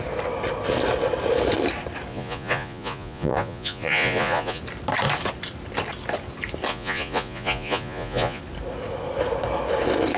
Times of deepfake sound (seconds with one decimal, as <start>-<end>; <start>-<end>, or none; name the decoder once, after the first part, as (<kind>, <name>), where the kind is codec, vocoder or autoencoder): 2.1-4.6 (vocoder, Vocos); 6.7-8.4

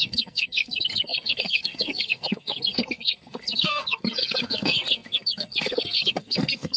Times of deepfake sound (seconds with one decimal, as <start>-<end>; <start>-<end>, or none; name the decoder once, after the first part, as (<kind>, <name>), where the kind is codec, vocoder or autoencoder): 0.0-6.8 (codec, SNAC)

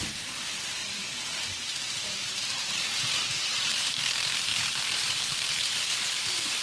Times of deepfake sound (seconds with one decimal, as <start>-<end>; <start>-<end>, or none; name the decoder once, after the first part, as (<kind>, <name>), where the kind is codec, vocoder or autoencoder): 0.0-6.6 (vocoder, BigVGAN v2)

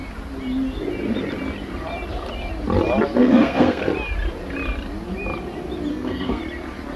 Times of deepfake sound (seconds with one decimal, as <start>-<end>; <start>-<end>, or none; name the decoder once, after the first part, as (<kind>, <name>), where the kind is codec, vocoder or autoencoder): 3.2-3.8 (codec, SNAC); 5.9-6.4

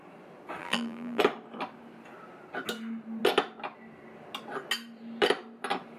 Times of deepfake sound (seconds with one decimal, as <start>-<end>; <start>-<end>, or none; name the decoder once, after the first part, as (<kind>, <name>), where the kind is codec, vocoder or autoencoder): 0.6-1.2 (vocoder, BigVGAN v2)

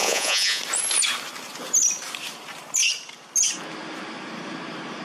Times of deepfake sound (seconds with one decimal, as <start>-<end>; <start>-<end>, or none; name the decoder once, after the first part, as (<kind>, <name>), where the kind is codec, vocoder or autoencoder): 0.0-0.6 (vocoder, Vocos)

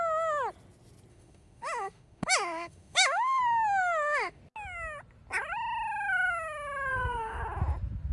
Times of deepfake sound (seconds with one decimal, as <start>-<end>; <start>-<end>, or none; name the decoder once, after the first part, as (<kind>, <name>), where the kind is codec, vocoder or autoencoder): 1.1-3.4 (autoencoder, DAC-VAE); 3.8-4.4; 6.9-7.4